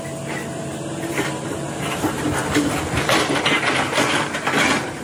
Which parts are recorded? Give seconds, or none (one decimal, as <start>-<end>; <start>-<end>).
0.0-0.4; 3.2-5.0